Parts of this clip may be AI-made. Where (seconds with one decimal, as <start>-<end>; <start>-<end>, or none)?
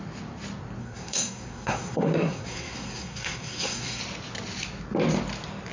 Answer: 0.8-4.0